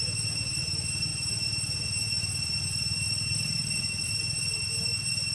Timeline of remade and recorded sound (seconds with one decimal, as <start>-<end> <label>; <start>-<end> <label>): 0.0-5.3 recorded